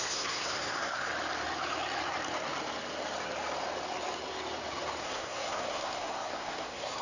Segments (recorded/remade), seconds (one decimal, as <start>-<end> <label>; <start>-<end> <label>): 0.0-1.1 remade; 1.1-5.0 recorded; 5.0-7.0 remade